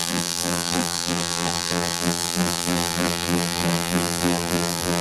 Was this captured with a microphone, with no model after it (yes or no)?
no